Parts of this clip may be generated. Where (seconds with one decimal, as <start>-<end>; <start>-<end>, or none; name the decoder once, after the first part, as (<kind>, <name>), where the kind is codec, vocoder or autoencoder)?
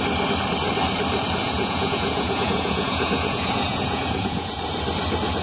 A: 1.4-4.6 (vocoder, Vocos)